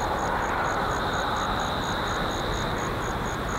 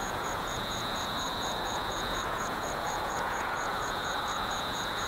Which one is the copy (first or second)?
second